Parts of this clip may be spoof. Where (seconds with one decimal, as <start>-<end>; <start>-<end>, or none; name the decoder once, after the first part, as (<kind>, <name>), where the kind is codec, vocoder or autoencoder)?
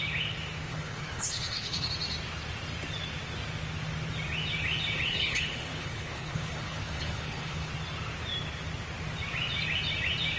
0.7-1.9 (codec, HILCodec); 5.1-7.7